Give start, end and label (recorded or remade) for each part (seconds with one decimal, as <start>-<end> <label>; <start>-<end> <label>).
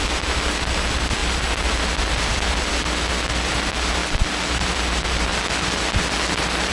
0.0-4.0 recorded; 4.0-4.5 remade; 4.5-5.3 recorded; 5.3-6.7 remade